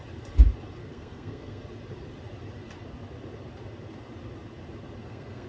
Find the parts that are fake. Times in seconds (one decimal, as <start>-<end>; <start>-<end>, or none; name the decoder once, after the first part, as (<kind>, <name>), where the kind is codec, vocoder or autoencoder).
0.8-1.6 (codec, SNAC); 5.0-5.5